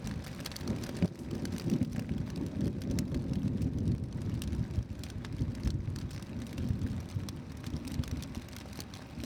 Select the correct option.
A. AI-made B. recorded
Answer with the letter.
B